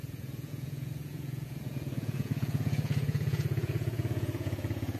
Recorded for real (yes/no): no